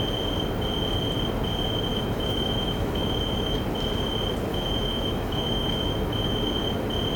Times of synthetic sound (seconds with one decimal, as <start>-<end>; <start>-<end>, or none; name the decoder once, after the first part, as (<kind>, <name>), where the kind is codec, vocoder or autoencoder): 1.9-3.6 (autoencoder, DAC-VAE); 4.5-6.5